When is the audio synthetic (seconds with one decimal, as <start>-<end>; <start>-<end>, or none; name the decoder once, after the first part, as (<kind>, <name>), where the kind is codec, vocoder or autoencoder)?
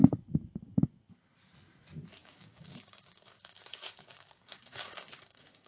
2.2-5.7 (codec, DAC)